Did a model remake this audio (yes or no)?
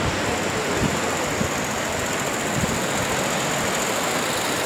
no